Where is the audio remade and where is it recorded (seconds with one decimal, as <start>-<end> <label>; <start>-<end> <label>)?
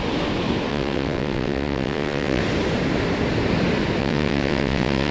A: 0.0-0.7 recorded; 0.7-2.4 remade; 2.4-4.0 recorded; 4.0-5.1 remade